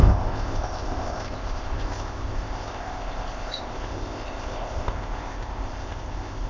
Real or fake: fake